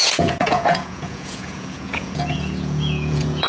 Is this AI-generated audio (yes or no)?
yes